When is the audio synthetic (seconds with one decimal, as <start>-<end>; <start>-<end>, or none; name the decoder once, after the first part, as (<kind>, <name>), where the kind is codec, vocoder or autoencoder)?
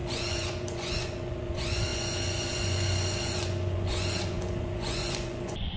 0.0-5.8 (vocoder, Vocos)